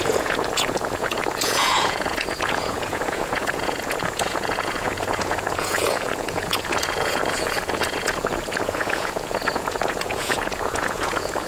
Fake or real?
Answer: fake